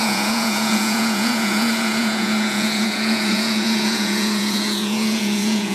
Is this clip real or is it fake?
fake